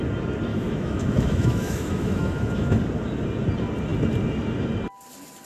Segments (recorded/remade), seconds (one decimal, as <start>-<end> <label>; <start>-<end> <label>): 0.0-0.5 recorded; 0.5-2.8 remade; 2.8-5.5 recorded